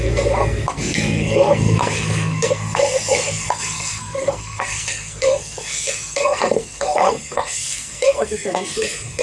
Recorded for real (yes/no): no